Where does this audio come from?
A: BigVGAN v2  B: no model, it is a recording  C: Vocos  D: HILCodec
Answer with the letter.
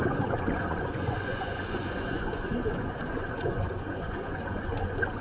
C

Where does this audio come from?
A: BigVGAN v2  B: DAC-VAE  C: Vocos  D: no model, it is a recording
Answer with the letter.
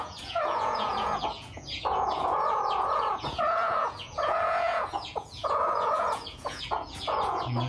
C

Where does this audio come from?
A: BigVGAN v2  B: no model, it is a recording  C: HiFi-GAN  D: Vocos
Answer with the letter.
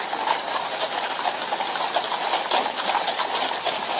B